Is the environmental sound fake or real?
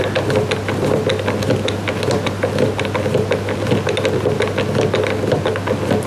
real